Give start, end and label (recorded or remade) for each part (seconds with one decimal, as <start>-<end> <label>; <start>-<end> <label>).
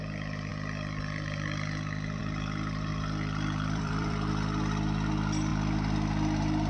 0.0-2.9 recorded; 2.9-4.3 remade; 4.3-6.7 recorded